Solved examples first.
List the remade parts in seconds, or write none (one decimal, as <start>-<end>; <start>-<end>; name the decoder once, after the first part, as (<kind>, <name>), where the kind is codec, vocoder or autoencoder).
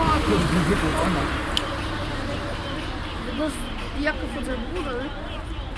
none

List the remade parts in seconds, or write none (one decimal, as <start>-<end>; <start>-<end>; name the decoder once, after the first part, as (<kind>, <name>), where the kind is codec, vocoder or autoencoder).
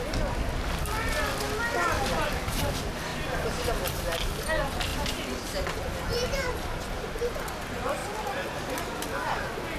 3.1-3.8 (vocoder, BigVGAN v2); 4.9-7.3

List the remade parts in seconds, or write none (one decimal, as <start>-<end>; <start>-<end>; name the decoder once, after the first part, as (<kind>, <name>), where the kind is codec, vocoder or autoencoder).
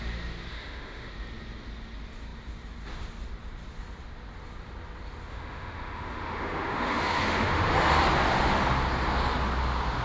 0.5-1.1 (autoencoder, DAC-VAE); 5.3-7.7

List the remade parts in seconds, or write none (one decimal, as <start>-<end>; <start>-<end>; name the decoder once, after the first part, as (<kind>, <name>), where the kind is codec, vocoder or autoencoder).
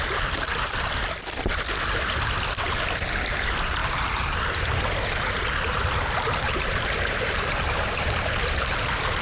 3.8-9.2 (vocoder, BigVGAN v2)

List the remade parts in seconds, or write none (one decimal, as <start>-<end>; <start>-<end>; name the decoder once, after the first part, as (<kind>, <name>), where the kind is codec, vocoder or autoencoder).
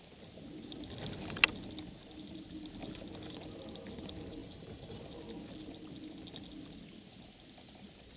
4.4-5.0 (vocoder, BigVGAN v2)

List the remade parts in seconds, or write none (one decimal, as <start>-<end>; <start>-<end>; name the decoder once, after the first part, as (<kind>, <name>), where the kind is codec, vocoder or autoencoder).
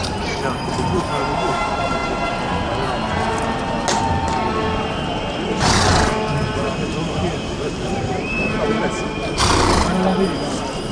0.0-2.0 (vocoder, BigVGAN v2); 4.8-5.9; 6.9-10.9